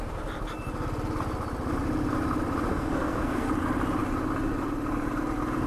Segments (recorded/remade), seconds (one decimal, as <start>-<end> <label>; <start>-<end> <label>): 0.0-2.7 recorded; 2.7-3.5 remade; 3.5-5.7 recorded